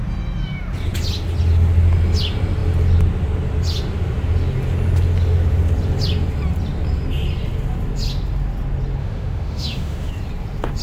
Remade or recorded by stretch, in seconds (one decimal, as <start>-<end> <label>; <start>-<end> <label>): 0.0-9.0 recorded; 9.0-10.1 remade; 10.1-10.8 recorded